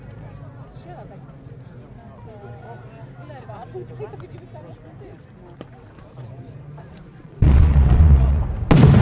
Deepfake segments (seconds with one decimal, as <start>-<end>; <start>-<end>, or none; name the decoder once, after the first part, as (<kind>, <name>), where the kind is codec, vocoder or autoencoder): 7.1-8.4 (vocoder, Vocos)